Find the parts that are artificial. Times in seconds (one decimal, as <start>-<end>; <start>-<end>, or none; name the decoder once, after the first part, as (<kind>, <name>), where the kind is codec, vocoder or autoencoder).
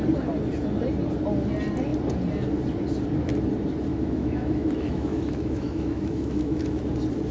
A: 3.9-6.8 (autoencoder, DAC-VAE)